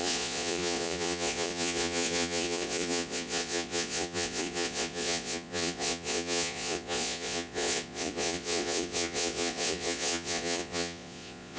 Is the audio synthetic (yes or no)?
yes